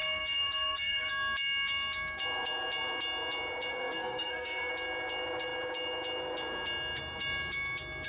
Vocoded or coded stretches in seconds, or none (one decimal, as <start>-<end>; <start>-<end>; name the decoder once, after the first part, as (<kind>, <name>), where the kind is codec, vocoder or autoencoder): 0.0-1.1 (codec, SNAC); 3.7-4.7